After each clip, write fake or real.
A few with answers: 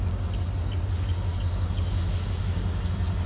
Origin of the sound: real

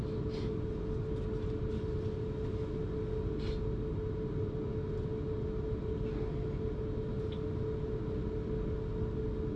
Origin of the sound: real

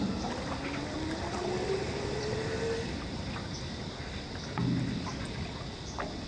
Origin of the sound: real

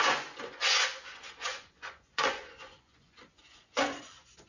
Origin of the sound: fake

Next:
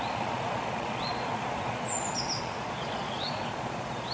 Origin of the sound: fake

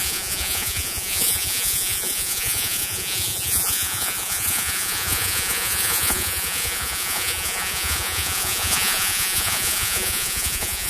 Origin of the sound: fake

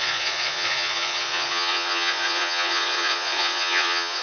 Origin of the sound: fake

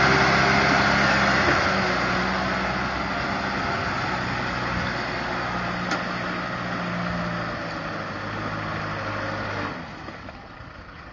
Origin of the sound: real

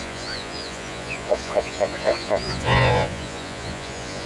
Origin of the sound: fake